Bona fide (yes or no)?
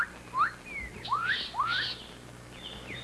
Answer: yes